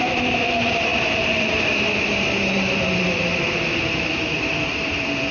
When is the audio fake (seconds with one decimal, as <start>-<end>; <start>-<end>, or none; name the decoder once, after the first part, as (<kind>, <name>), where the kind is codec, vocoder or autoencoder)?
0.0-5.3 (vocoder, BigVGAN v2)